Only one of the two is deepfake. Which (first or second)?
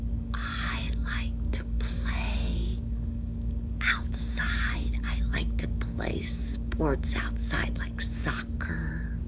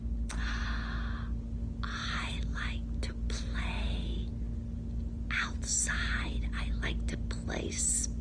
first